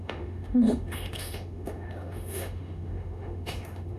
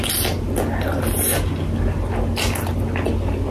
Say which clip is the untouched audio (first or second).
second